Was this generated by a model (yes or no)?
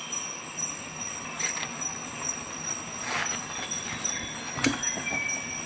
no